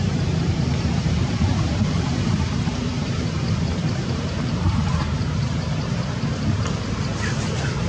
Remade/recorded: remade